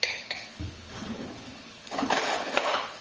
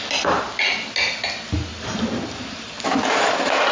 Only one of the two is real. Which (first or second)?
second